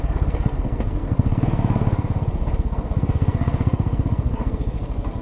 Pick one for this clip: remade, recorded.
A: remade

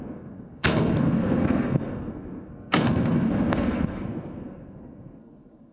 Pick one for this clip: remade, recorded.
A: remade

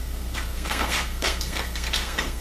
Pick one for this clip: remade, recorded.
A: remade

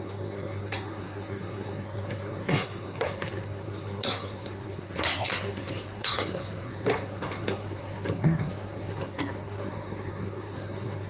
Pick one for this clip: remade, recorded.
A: remade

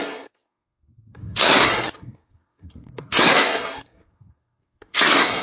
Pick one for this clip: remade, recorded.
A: remade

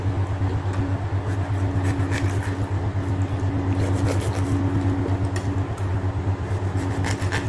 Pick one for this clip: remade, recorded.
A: recorded